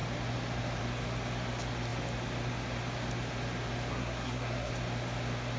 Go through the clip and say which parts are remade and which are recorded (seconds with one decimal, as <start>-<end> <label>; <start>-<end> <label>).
0.0-3.9 recorded; 3.9-4.7 remade; 4.7-5.6 recorded

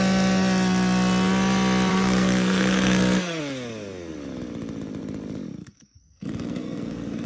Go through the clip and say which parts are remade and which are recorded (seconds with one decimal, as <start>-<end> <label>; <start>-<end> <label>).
0.0-1.9 recorded; 1.9-3.4 remade; 3.4-5.6 recorded; 5.6-7.3 remade

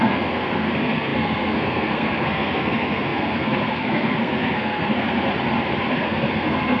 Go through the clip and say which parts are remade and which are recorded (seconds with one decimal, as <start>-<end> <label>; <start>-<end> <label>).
0.0-5.3 remade; 5.3-5.9 recorded; 5.9-6.8 remade

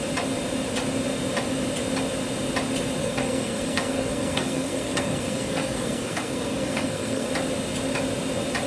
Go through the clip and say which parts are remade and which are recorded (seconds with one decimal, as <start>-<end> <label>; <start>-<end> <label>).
0.0-3.0 recorded; 3.0-7.3 remade; 7.3-8.7 recorded

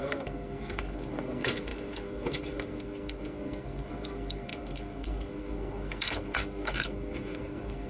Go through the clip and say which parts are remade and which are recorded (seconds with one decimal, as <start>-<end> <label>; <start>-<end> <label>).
0.0-7.9 remade

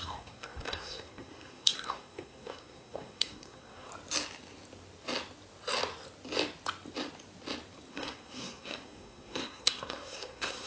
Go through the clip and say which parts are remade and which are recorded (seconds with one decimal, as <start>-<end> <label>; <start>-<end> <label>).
0.0-3.9 remade; 3.9-7.9 recorded; 7.9-10.7 remade

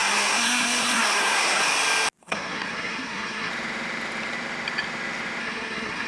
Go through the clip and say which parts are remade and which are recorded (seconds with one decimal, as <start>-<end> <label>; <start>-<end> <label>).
0.0-1.6 remade; 1.6-2.2 recorded; 2.2-3.5 remade; 3.5-5.4 recorded; 5.4-6.1 remade